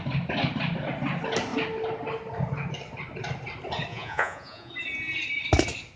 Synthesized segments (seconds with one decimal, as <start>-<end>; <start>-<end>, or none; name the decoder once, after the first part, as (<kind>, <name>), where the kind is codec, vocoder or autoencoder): 3.9-4.7 (vocoder, Vocos)